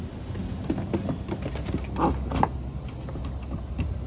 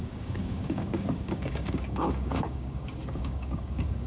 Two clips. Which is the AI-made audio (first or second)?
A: second